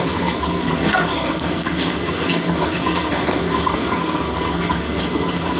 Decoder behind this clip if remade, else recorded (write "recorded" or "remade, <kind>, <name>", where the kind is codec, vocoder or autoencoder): remade, codec, SNAC